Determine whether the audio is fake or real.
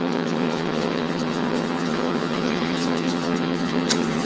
fake